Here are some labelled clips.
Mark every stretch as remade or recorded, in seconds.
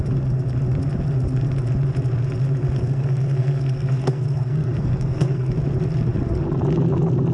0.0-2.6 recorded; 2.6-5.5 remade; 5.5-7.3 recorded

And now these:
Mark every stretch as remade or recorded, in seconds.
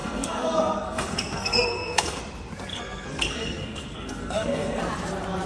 0.0-2.2 remade; 2.2-2.7 recorded; 2.7-4.8 remade; 4.8-5.5 recorded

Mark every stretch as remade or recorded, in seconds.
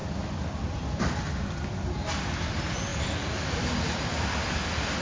0.0-5.0 recorded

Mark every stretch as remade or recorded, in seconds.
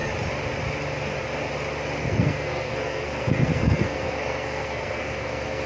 0.0-2.0 recorded; 2.0-5.7 remade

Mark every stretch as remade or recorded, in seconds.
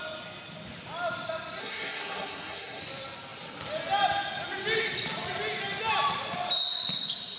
0.0-1.6 recorded; 1.6-2.8 remade; 2.8-7.4 recorded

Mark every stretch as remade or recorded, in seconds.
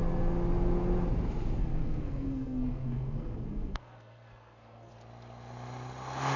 0.0-1.6 recorded; 1.6-4.9 remade; 4.9-6.4 recorded